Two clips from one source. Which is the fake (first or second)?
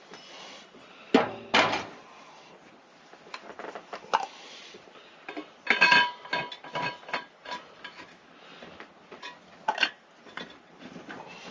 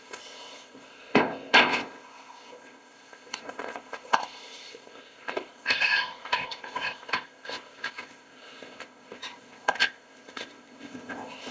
second